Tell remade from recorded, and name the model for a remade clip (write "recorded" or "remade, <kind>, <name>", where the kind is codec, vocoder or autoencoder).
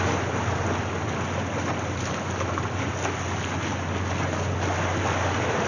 recorded